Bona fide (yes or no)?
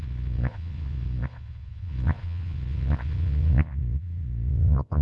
no